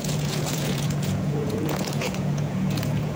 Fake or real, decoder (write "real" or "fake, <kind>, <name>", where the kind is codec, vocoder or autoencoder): fake, vocoder, Vocos